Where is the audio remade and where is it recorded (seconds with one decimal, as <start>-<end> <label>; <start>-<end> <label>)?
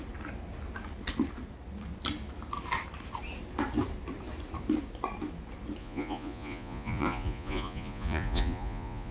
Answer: 0.0-5.8 recorded; 5.8-9.1 remade